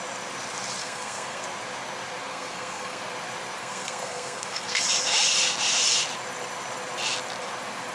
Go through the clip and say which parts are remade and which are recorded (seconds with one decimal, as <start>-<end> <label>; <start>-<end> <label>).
0.0-0.8 recorded; 0.8-1.4 remade; 1.4-2.3 recorded; 2.3-3.0 remade; 3.0-3.6 recorded; 3.6-4.8 remade; 4.8-7.9 recorded